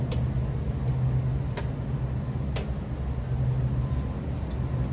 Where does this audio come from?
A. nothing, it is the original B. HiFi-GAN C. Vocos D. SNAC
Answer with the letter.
A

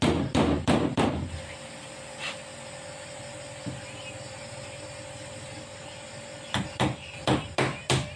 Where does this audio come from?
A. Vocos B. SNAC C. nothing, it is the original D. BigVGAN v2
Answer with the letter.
C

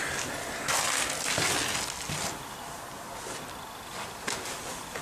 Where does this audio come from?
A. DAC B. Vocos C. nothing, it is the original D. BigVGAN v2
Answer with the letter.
C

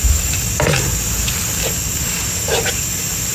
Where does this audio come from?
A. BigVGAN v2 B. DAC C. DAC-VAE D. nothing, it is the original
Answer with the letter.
D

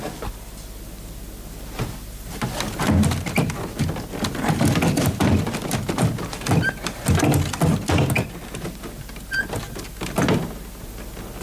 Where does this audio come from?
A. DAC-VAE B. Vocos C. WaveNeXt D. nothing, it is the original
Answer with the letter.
D